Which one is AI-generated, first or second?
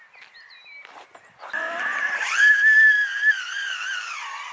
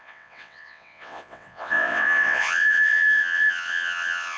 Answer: second